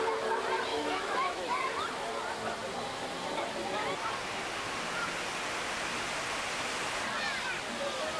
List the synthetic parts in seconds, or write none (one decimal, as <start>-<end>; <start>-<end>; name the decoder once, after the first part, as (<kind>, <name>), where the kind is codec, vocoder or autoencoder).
0.7-1.6 (autoencoder, DAC-VAE)